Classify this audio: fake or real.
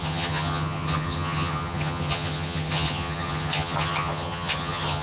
fake